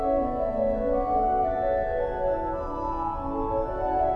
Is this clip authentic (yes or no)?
yes